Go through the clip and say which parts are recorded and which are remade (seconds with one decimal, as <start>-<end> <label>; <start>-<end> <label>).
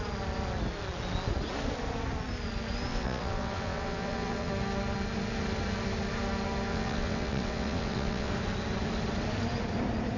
0.0-2.9 recorded; 2.9-4.5 remade; 4.5-6.7 recorded; 6.7-8.3 remade; 8.3-10.2 recorded